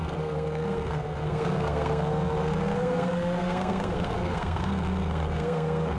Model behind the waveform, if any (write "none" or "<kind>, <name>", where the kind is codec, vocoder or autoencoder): codec, SNAC